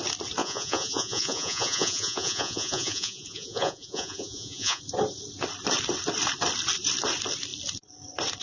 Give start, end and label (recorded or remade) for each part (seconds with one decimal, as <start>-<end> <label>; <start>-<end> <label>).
0.0-0.4 recorded; 0.4-4.8 remade; 4.8-8.4 recorded